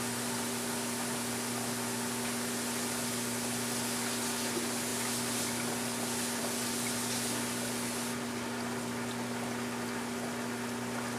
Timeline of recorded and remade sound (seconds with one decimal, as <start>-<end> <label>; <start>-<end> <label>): 0.0-11.2 recorded